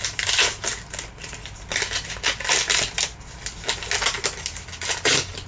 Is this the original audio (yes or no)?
yes